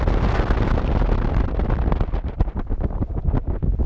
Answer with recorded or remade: recorded